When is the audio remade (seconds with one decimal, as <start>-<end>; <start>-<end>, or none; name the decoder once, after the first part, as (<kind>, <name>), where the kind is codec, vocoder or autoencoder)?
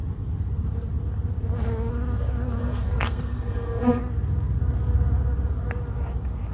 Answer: 2.6-4.0 (codec, SNAC)